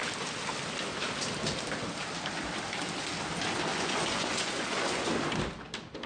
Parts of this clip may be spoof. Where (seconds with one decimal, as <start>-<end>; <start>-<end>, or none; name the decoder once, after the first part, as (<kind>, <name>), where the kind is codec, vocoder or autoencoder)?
3.7-5.1 (vocoder, Vocos)